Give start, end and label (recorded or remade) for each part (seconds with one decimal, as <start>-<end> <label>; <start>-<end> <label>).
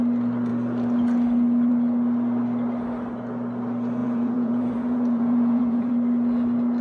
0.0-4.0 recorded; 4.0-5.9 remade; 5.9-6.8 recorded